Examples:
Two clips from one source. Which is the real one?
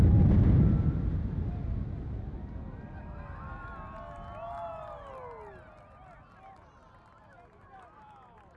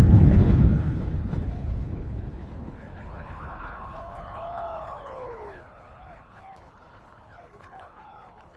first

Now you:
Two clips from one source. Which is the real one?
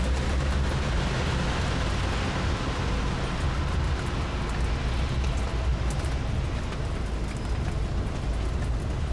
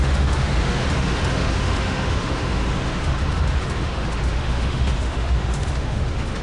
first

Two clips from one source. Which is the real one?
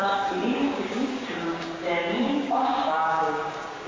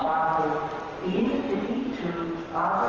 second